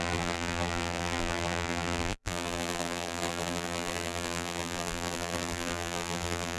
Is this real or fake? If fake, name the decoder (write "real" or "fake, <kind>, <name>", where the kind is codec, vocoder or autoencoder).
fake, vocoder, BigVGAN v2